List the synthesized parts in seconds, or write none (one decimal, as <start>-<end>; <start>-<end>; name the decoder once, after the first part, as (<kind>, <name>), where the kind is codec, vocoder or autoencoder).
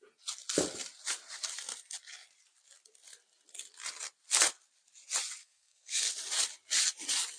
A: 5.4-6.1 (codec, SNAC)